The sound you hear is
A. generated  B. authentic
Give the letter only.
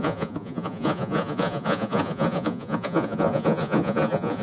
A